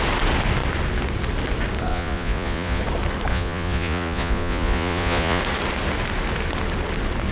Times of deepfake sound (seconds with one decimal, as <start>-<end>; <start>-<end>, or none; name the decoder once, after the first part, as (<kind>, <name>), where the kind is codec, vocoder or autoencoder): 1.9-2.8 (vocoder, Vocos); 3.3-5.4